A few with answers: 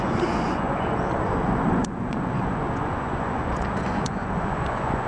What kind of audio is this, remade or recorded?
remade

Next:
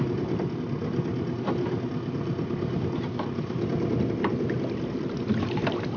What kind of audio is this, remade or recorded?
recorded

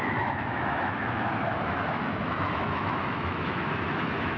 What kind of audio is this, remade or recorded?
remade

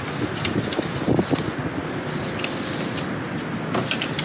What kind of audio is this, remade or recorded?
recorded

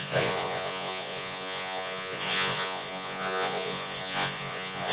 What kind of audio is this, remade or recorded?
remade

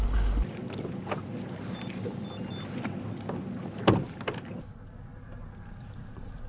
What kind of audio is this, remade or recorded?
recorded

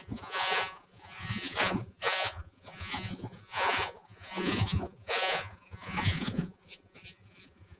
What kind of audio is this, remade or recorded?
remade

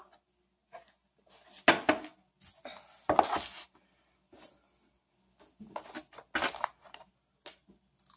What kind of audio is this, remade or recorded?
recorded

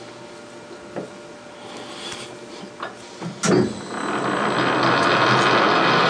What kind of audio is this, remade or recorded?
recorded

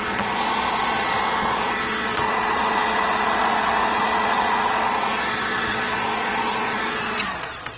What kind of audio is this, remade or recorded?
remade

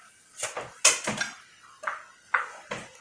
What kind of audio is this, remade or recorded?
recorded